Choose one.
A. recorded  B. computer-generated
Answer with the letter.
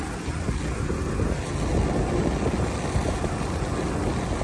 A